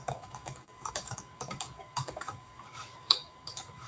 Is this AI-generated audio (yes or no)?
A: yes